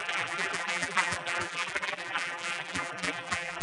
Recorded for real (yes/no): no